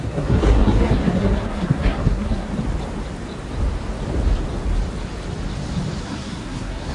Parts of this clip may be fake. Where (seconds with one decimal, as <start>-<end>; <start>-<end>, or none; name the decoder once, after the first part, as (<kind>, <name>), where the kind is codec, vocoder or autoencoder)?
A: 0.0-2.5 (codec, SNAC); 6.0-6.9